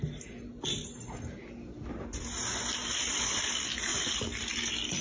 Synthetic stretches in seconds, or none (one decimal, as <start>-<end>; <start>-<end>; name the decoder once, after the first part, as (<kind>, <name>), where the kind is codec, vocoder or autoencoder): 2.8-3.4 (vocoder, BigVGAN v2); 3.9-4.4